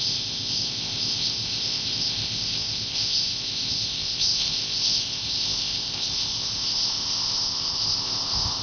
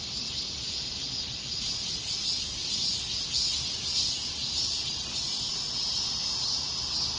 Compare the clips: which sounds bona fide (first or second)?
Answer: second